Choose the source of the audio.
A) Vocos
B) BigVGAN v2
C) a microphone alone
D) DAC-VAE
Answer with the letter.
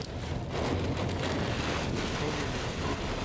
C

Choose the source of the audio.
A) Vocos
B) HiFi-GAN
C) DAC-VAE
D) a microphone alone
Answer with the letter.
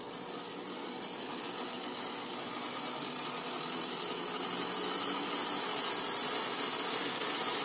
D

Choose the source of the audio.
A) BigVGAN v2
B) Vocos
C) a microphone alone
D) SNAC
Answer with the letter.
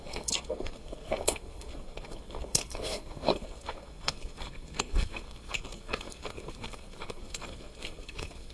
D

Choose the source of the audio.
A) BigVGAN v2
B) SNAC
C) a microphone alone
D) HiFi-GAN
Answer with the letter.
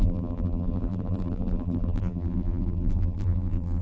A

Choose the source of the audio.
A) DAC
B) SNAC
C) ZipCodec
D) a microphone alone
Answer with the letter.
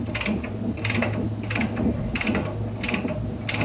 D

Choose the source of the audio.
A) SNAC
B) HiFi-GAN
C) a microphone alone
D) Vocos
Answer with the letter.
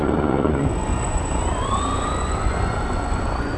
D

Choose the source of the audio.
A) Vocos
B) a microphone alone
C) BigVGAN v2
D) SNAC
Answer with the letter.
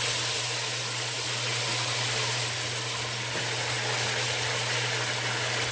B